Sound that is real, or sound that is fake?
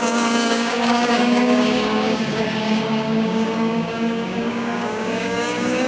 fake